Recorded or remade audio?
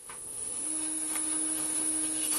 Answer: remade